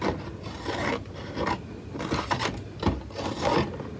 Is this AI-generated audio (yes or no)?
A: no